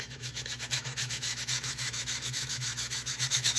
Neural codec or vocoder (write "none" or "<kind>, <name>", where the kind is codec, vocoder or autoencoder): autoencoder, DAC-VAE